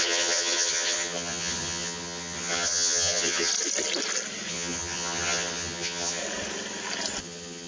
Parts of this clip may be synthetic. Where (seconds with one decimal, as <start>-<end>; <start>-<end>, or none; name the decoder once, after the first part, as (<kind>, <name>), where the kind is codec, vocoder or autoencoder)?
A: 0.0-3.5 (vocoder, HiFi-GAN); 4.5-6.2; 7.2-7.7